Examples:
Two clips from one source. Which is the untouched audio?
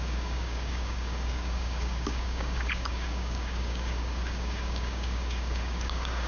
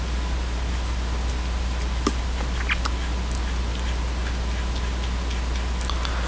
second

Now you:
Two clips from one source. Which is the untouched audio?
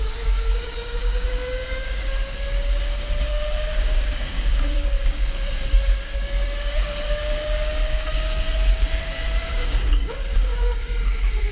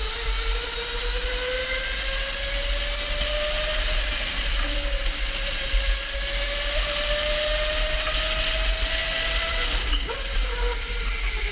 second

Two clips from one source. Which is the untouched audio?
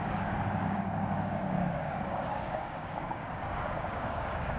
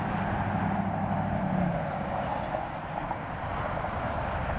second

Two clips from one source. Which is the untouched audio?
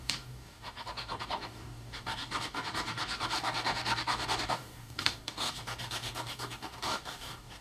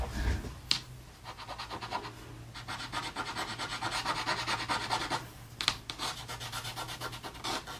second